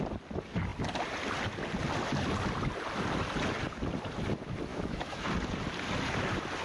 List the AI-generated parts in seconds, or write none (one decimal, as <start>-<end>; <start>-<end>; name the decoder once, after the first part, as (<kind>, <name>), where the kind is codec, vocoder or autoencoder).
4.7-5.3 (autoencoder, DAC-VAE)